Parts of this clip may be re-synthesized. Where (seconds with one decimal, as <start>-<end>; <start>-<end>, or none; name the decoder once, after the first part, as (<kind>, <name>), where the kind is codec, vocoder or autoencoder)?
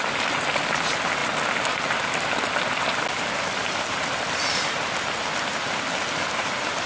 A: none